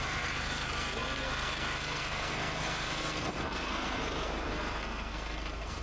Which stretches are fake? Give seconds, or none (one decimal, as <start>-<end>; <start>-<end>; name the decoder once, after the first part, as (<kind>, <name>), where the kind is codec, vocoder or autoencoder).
0.0-5.8 (codec, SNAC)